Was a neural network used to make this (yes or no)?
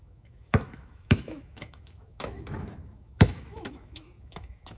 yes